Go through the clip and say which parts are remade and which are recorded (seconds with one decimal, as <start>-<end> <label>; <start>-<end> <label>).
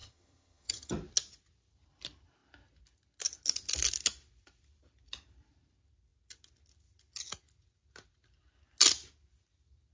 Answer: 0.0-0.9 remade; 0.9-9.9 recorded